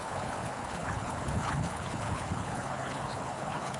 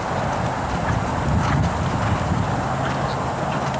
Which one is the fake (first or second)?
first